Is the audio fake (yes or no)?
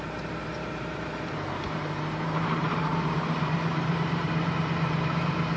yes